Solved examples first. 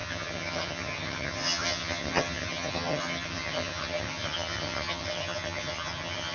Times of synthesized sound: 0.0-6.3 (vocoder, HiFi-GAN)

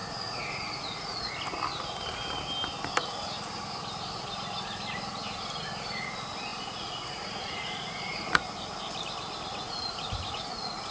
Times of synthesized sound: 0.0-1.3 (vocoder, Vocos); 6.5-8.3; 9.5-10.9